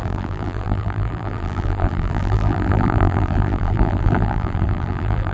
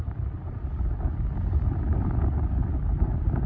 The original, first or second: second